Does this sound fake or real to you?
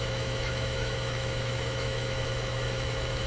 fake